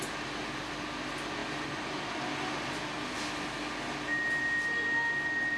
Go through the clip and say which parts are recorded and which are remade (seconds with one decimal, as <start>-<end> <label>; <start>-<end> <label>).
0.0-5.6 recorded